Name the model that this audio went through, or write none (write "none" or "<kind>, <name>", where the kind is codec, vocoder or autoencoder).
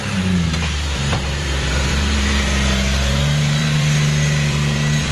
vocoder, BigVGAN v2